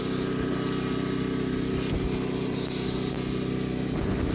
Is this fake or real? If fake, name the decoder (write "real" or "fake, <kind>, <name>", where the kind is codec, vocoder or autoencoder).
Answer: real